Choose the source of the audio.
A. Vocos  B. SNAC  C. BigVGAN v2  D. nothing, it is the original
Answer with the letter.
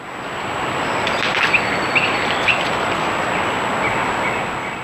D